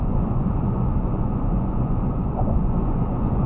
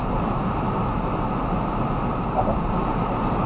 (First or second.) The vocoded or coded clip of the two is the first